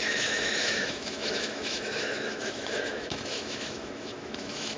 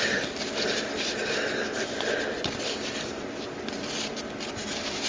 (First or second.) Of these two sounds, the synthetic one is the first